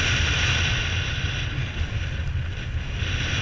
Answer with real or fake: real